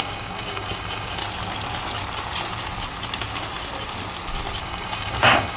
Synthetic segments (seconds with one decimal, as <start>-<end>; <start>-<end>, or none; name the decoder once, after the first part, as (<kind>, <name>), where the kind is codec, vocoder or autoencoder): 0.0-1.2 (codec, DAC); 4.6-5.6

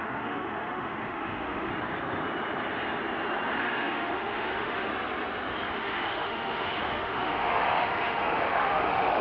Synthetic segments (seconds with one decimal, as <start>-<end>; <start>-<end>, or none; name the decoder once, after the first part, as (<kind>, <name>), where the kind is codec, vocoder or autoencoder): 0.0-1.7 (autoencoder, DAC-VAE); 3.6-4.9; 5.7-9.2

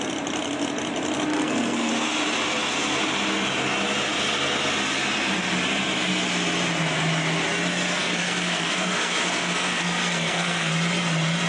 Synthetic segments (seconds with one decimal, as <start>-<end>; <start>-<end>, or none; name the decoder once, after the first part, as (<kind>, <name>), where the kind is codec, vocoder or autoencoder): 1.3-1.9 (codec, SNAC); 8.0-10.7

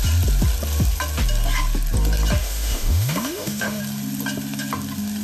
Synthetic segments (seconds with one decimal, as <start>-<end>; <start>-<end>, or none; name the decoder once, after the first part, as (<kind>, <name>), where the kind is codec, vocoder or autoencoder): 2.4-3.8 (autoencoder, DAC-VAE)

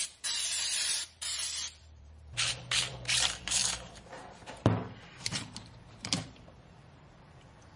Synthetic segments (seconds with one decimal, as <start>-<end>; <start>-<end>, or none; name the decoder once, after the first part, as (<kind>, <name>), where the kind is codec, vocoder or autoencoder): 0.0-7.8 (vocoder, BigVGAN v2)

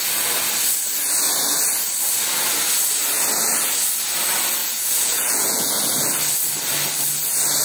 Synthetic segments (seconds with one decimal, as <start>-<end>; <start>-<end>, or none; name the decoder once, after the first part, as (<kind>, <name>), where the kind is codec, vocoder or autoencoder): 4.6-5.7 (vocoder, Vocos)

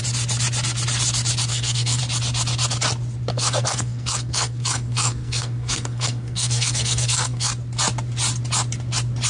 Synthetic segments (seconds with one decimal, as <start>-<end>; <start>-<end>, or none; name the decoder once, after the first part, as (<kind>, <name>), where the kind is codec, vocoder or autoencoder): 1.5-2.0 (codec, SNAC); 3.3-7.5

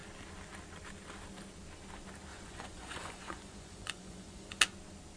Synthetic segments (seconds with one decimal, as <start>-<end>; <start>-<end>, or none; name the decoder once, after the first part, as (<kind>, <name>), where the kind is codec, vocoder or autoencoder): 2.3-4.6 (vocoder, Vocos)